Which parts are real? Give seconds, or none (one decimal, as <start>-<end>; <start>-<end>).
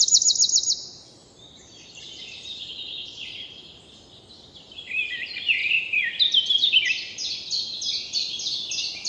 0.0-1.2; 3.3-9.1